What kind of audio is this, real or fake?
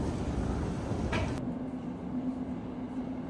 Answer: real